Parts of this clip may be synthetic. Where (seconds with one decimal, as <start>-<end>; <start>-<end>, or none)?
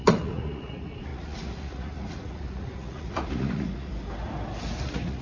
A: 0.0-3.9; 4.8-5.2